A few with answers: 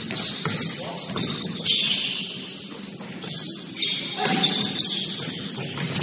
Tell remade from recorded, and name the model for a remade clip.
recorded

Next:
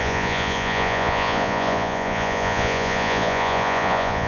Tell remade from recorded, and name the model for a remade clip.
remade, vocoder, Vocos